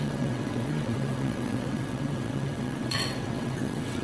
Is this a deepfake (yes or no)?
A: yes